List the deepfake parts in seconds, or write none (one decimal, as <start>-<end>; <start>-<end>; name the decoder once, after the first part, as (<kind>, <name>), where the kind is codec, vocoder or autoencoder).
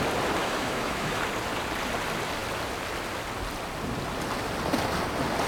0.4-1.2 (autoencoder, DAC-VAE)